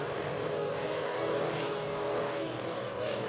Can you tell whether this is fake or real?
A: fake